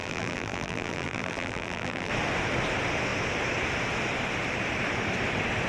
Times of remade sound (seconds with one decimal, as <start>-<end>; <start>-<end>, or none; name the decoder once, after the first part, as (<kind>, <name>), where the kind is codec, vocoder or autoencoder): 0.0-2.1 (vocoder, BigVGAN v2)